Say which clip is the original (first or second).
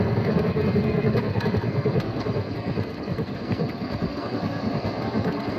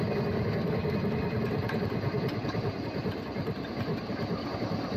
second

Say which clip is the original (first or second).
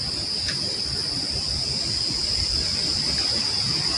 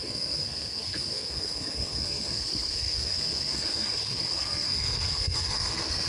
first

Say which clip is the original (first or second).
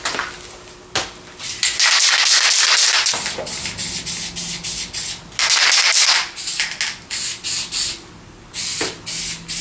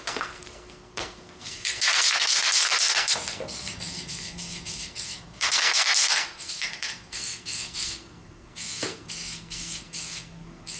first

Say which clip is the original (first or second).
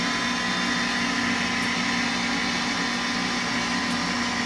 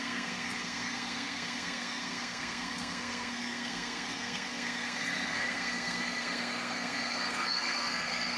first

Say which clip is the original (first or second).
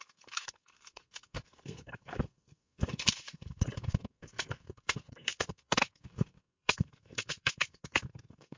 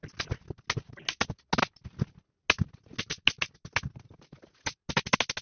second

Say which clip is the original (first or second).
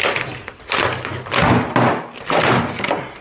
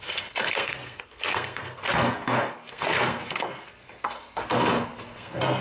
first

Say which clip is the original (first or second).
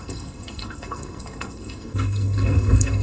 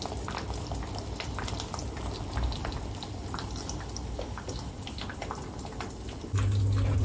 second